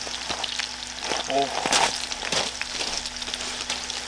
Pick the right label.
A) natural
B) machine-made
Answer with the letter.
A